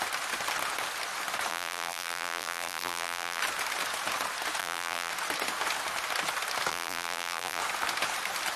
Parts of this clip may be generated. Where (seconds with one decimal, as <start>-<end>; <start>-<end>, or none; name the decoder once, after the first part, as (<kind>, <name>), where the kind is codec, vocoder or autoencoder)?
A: 1.5-3.4 (vocoder, BigVGAN v2); 4.6-5.1; 6.7-7.6